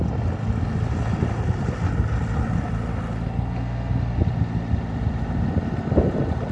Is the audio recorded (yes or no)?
yes